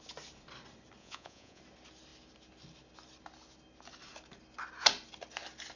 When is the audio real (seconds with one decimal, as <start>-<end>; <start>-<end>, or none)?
0.0-1.0; 1.6-5.8